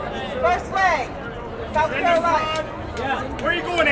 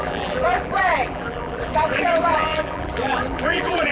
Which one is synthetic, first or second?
second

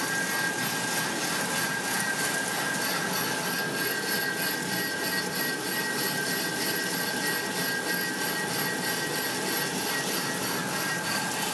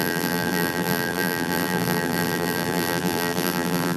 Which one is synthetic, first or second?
second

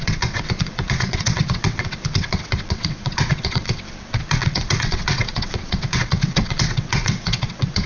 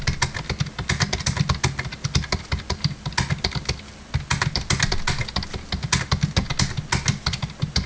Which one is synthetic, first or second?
first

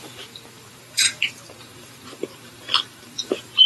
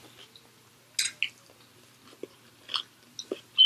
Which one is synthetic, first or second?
first